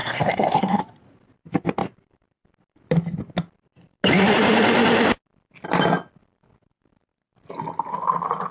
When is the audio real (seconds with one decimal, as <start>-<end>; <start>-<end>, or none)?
0.8-8.5